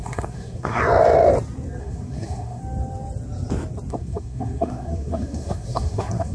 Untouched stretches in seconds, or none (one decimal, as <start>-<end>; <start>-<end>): 0.8-1.8; 2.6-3.9